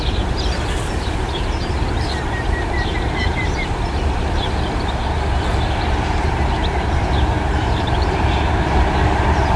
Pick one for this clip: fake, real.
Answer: fake